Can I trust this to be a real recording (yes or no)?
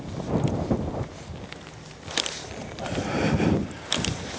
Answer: no